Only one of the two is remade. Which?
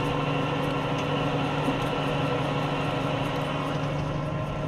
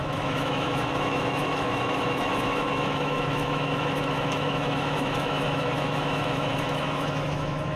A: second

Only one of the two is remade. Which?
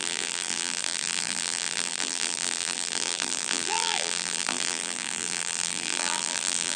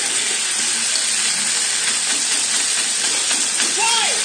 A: first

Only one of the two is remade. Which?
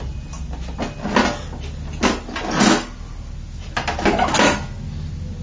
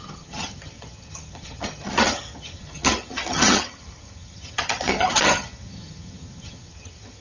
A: second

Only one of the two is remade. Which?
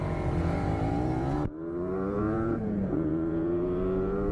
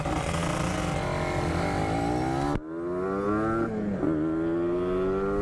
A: first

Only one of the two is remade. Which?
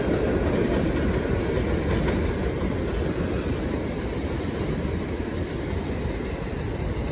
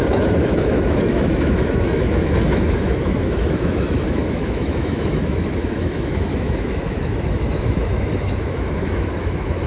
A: second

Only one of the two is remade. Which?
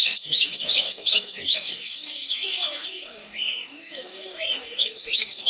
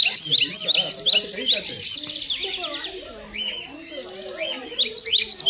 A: first